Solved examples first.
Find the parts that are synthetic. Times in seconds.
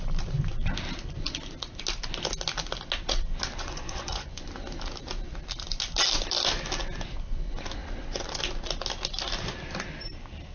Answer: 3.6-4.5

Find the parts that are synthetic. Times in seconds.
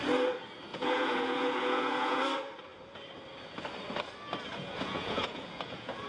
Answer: 0.7-2.2; 4.5-6.1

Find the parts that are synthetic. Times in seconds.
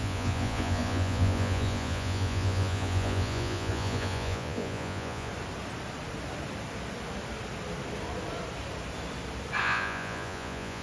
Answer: 0.0-5.3; 9.6-10.8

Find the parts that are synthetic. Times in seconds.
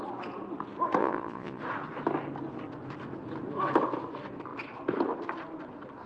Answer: 1.0-1.6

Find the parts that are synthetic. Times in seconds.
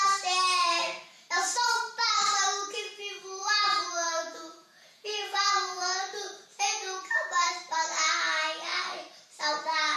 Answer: 3.4-6.0; 6.5-7.5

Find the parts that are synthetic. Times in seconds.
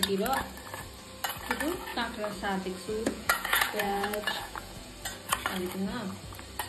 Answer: 1.9-4.9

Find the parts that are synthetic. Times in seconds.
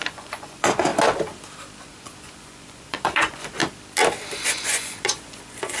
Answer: 0.0-0.9; 1.8-3.6; 4.5-5.8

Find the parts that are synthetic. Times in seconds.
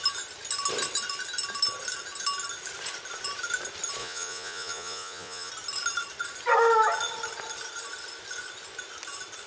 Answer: 4.0-5.5